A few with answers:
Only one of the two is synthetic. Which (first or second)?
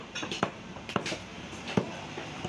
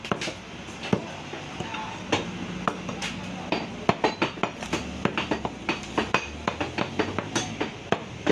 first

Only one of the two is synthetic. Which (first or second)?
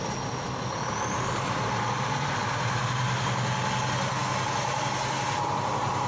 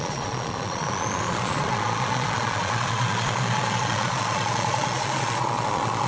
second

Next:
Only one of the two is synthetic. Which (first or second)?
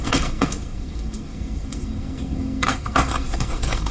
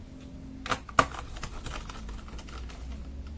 first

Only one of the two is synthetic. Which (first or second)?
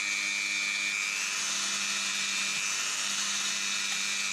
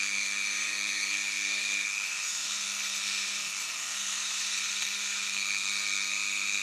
second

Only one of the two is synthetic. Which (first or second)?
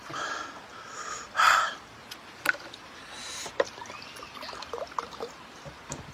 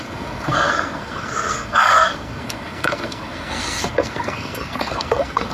second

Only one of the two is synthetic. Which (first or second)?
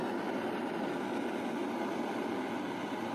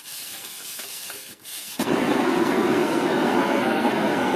second